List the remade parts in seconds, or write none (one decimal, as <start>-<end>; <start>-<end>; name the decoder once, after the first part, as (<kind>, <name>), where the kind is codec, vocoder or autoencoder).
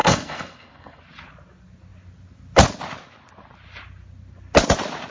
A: 0.0-1.0 (codec, SNAC)